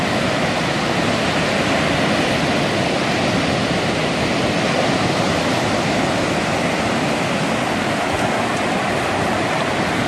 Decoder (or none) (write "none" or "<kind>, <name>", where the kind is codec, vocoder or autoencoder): none